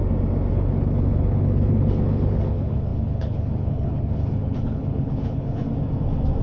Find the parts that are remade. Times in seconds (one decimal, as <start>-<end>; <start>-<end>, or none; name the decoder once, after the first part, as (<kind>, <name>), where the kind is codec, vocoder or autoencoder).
0.5-5.7 (codec, HILCodec)

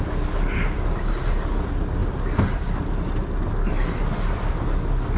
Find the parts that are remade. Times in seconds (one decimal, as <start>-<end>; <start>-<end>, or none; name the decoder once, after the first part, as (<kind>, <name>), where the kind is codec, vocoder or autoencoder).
none